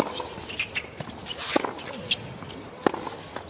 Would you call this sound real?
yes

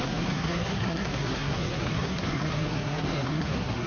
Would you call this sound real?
no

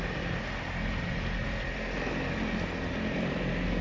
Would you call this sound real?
yes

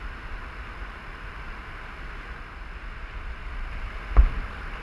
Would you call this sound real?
yes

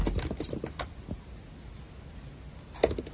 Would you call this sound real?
yes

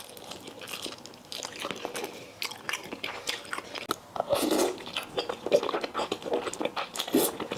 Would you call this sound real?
yes